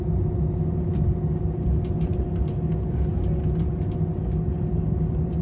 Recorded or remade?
recorded